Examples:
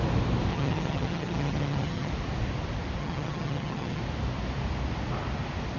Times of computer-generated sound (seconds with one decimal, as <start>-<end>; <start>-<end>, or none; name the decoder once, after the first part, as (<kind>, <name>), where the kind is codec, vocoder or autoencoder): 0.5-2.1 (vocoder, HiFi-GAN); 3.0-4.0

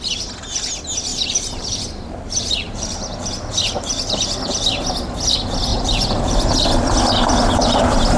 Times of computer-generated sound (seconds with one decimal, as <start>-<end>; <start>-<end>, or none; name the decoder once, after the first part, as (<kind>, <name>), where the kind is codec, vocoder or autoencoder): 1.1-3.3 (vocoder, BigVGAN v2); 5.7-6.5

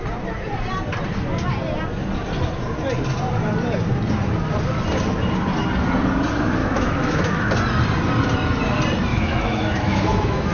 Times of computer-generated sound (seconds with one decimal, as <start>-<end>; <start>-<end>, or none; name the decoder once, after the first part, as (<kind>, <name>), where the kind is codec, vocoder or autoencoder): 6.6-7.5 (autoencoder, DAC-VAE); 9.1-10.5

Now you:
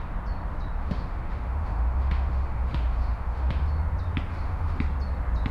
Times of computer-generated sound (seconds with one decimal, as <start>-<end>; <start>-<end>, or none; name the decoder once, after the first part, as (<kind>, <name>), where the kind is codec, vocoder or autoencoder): 0.8-3.7 (autoencoder, DAC-VAE); 4.3-4.8

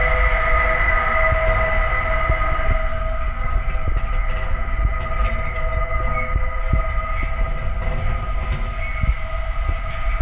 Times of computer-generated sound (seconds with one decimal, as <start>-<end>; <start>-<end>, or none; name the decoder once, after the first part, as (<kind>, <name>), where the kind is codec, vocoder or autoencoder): none

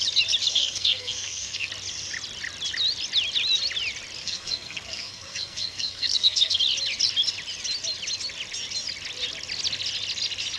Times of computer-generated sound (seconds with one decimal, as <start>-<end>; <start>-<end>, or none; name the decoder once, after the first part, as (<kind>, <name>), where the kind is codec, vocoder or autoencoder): 0.5-1.7 (codec, SNAC); 4.2-6.6

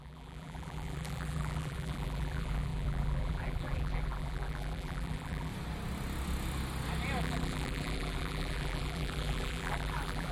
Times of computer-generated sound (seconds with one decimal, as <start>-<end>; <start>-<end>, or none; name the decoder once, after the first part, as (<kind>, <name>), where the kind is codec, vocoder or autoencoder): 0.0-5.5 (vocoder, BigVGAN v2); 7.2-10.3